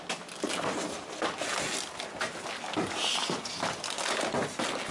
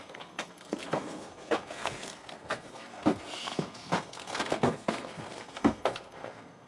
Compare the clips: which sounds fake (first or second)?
second